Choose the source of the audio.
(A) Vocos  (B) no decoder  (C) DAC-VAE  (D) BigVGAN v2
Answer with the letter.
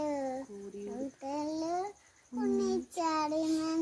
B